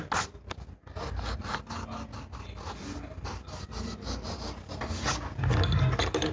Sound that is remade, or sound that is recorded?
recorded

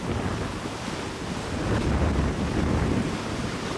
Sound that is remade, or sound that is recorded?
recorded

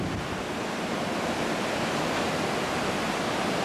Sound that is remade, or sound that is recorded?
recorded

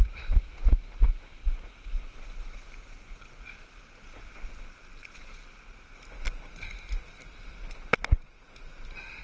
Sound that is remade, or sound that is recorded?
recorded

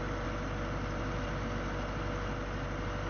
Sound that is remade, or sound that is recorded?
recorded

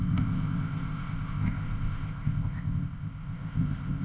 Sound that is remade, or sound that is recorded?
remade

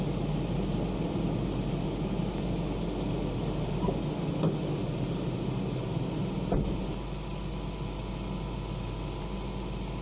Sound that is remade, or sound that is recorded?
recorded